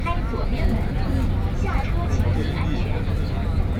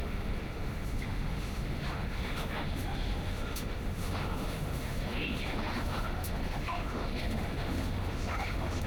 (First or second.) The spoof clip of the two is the second